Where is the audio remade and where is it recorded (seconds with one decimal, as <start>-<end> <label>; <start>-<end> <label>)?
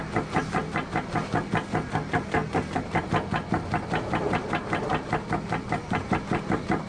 0.0-5.8 recorded; 5.8-6.5 remade; 6.5-6.9 recorded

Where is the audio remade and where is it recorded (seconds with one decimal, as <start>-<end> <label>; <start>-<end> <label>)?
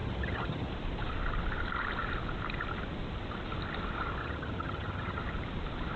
0.0-0.7 remade; 0.7-4.2 recorded; 4.2-5.2 remade; 5.2-6.0 recorded